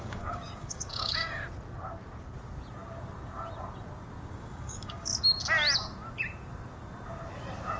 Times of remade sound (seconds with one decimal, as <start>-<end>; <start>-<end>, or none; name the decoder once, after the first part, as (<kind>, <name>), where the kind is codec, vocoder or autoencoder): 0.0-1.4 (codec, DAC); 4.3-5.1